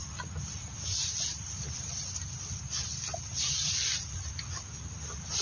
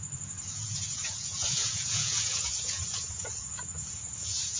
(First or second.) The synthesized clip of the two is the second